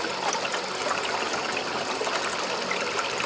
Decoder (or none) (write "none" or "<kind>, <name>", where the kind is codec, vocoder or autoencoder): none